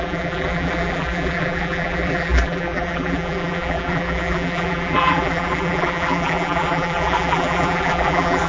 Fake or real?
fake